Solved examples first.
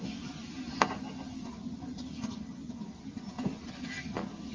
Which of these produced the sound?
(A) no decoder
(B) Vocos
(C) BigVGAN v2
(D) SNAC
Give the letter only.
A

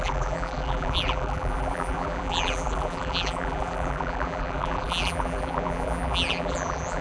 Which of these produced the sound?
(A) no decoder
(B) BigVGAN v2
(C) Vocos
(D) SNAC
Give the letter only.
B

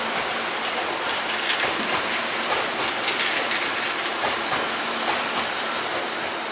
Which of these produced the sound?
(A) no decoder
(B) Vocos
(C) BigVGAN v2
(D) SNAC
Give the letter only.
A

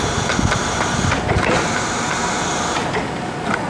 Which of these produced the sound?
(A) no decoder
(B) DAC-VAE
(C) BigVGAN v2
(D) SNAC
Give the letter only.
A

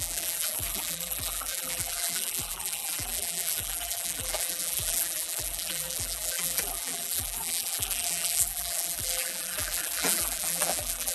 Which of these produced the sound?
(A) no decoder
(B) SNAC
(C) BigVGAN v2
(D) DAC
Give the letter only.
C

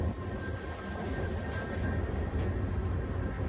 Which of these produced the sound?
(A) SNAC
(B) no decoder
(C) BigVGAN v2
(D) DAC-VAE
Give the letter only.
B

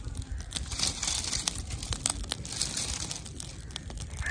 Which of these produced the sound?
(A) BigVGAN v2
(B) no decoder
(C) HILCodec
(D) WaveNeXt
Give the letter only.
B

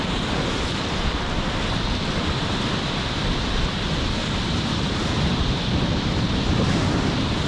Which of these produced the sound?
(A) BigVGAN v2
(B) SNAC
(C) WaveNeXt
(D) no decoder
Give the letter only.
A